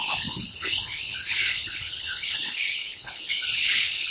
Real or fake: fake